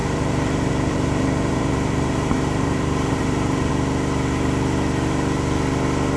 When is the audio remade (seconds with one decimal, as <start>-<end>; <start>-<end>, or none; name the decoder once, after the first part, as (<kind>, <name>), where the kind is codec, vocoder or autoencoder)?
0.0-3.7 (vocoder, BigVGAN v2)